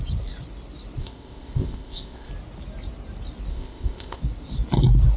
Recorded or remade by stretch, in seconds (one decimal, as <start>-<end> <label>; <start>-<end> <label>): 0.0-1.0 recorded; 1.0-2.3 remade; 2.3-3.5 recorded; 3.5-4.2 remade; 4.2-5.2 recorded